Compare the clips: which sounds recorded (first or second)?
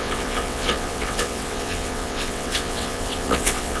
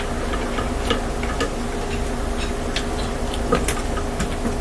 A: second